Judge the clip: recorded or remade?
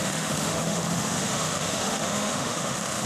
remade